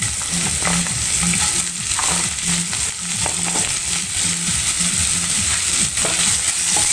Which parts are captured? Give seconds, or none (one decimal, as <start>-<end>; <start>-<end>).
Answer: 0.0-6.9